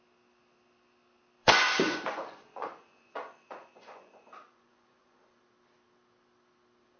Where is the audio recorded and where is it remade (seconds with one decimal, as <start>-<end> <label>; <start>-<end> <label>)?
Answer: 0.0-1.4 recorded; 1.4-5.4 remade; 5.4-7.0 recorded